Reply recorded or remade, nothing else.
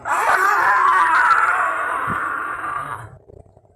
remade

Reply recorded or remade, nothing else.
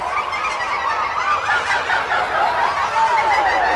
recorded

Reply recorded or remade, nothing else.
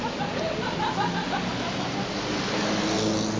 recorded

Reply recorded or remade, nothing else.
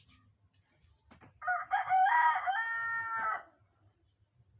recorded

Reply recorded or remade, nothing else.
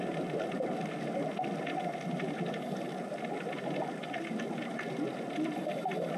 recorded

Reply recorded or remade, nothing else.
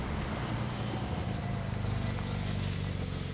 recorded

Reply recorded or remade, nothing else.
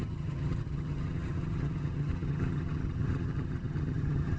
remade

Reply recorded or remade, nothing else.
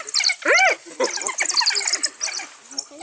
recorded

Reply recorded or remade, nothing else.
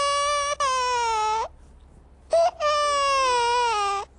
recorded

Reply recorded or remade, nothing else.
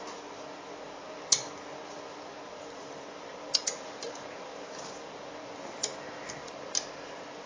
recorded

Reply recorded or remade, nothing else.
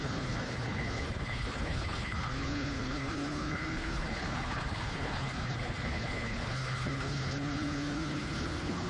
remade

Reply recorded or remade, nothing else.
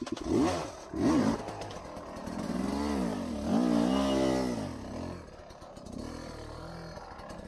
recorded